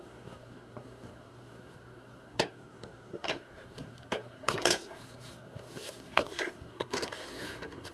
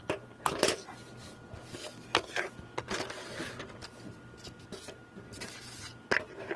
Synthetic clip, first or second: first